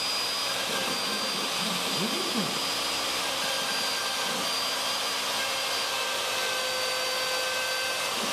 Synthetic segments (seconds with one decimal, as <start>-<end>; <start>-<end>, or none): none